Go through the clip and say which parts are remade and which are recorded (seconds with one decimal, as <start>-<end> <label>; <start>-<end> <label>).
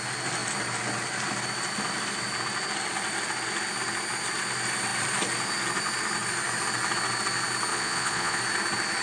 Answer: 0.0-7.7 recorded; 7.7-8.4 remade; 8.4-9.0 recorded